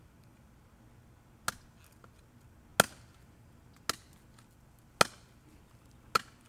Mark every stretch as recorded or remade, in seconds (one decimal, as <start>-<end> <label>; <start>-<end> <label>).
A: 0.0-6.5 recorded